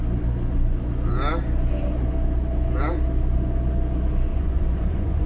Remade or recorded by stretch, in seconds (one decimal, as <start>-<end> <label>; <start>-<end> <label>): 0.0-4.3 recorded; 4.3-5.3 remade